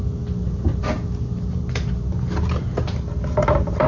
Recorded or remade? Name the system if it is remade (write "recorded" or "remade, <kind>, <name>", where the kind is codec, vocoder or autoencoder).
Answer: recorded